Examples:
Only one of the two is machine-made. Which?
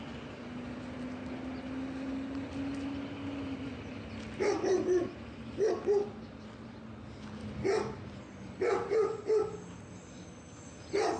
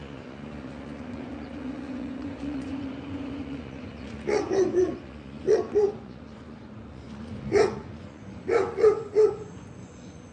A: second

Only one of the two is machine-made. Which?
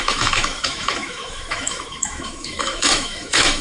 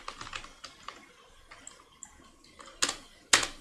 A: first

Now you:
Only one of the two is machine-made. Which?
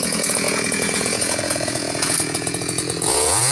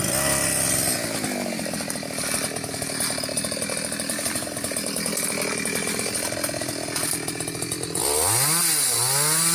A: first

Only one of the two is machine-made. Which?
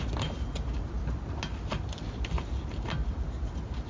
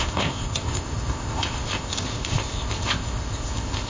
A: second